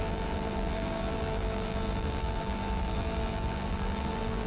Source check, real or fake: fake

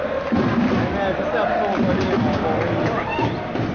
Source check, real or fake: real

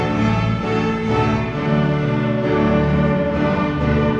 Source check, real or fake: real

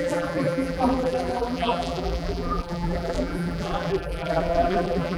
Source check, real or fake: fake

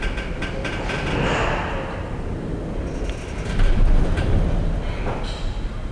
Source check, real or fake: real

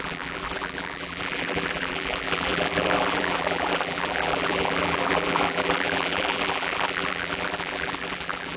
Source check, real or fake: fake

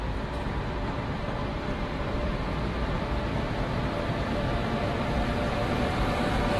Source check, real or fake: fake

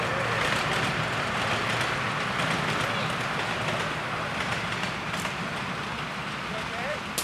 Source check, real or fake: real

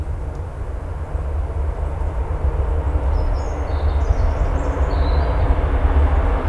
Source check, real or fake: real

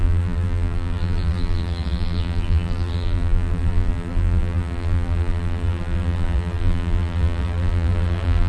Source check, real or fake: fake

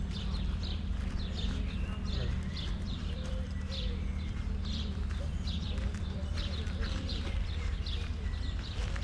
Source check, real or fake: fake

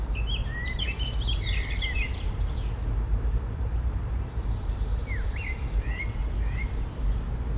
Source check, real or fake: fake